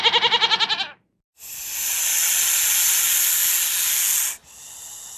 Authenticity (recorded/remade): recorded